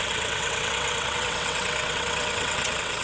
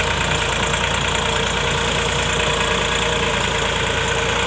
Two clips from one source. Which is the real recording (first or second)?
second